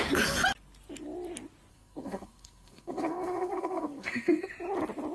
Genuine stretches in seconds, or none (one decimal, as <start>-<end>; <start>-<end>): 0.0-1.7; 4.5-5.1